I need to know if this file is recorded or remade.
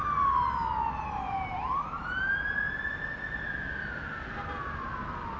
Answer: recorded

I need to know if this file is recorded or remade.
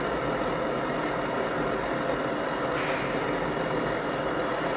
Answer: recorded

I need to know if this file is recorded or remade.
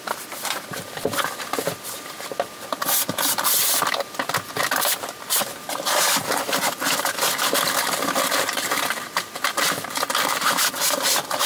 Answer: remade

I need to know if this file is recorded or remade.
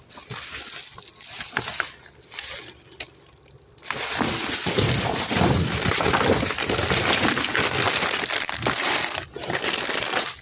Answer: recorded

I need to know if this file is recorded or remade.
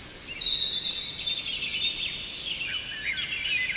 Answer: recorded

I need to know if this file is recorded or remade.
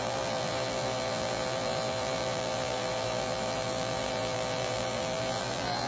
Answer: remade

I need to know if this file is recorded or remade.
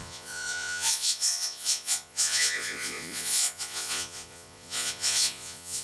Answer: remade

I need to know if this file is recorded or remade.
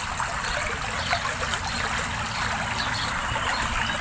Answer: recorded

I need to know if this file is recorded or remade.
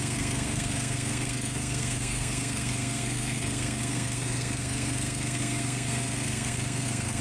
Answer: remade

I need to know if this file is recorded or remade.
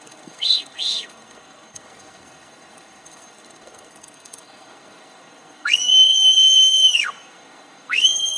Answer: remade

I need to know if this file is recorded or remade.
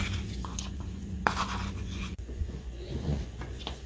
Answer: remade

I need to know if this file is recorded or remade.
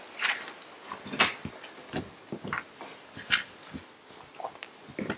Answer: recorded